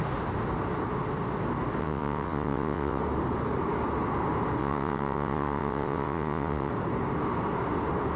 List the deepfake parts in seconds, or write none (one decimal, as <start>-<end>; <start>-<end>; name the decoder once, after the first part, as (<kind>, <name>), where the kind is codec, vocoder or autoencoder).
1.8-3.0 (vocoder, WaveNeXt); 4.6-6.7